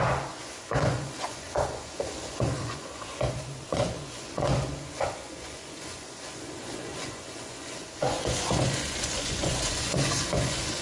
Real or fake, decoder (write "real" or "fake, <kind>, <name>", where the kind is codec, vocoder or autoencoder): fake, vocoder, Vocos